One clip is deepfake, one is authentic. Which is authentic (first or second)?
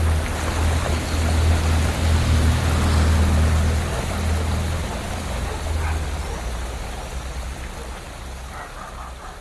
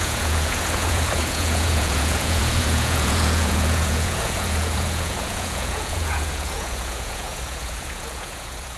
first